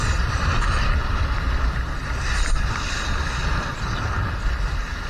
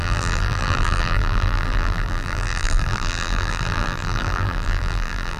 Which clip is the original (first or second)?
first